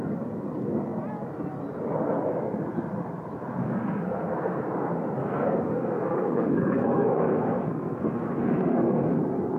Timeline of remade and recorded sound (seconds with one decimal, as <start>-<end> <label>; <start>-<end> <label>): 0.0-3.6 recorded; 3.6-4.6 remade; 4.6-5.2 recorded; 5.2-9.2 remade; 9.2-9.6 recorded